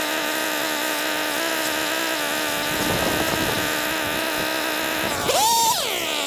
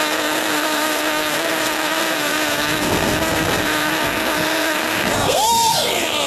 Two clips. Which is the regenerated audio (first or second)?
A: second